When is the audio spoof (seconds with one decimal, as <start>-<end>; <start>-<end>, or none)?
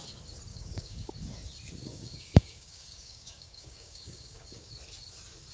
0.5-1.1; 1.8-4.7